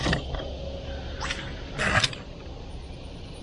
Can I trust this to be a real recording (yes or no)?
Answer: yes